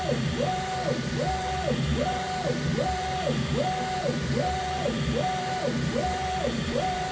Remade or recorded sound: remade